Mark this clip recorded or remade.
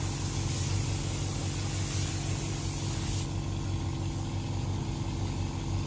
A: recorded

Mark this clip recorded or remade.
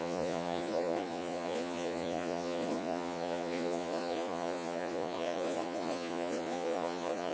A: remade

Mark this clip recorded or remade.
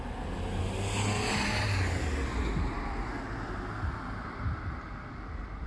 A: recorded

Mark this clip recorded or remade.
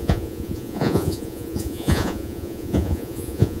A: remade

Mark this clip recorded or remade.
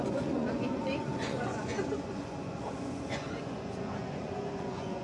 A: remade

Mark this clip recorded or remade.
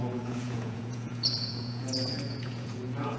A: remade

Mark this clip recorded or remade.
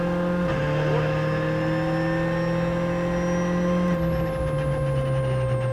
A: recorded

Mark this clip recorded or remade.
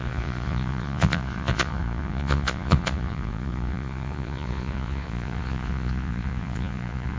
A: remade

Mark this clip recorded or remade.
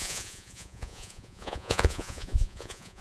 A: remade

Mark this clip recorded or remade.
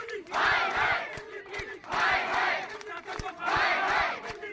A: remade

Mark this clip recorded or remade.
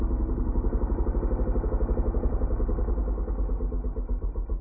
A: recorded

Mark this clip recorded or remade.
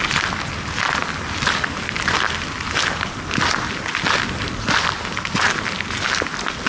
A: recorded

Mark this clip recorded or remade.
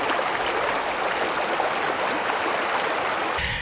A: recorded